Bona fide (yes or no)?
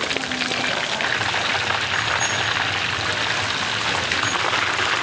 yes